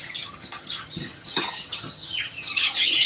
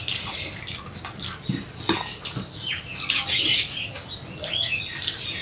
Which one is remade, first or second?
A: first